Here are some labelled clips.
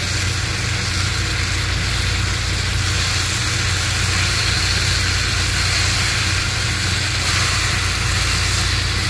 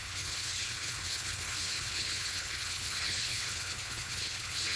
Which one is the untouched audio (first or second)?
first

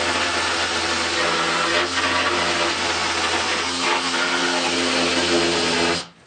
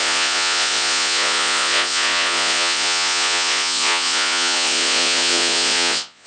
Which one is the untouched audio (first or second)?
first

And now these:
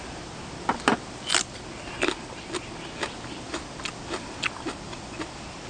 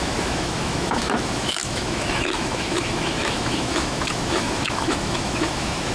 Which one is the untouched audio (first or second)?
first